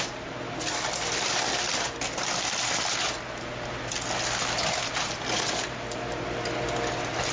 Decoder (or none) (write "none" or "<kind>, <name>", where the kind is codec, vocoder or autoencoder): none